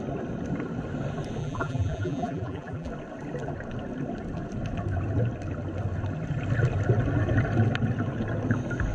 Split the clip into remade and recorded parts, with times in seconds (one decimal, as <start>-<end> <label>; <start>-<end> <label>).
0.0-1.4 recorded; 1.4-2.9 remade; 2.9-8.9 recorded